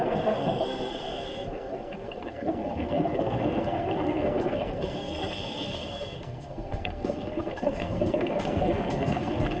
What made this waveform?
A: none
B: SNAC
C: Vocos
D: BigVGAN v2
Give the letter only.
B